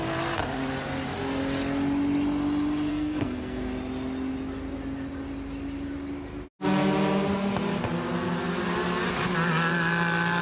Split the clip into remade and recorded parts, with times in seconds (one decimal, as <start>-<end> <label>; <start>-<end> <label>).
0.0-2.9 recorded; 2.9-3.7 remade; 3.7-10.4 recorded